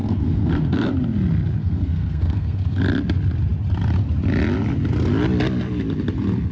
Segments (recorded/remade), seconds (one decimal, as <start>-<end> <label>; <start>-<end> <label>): 0.0-0.9 remade; 0.9-1.6 recorded; 1.6-2.8 remade; 2.8-6.5 recorded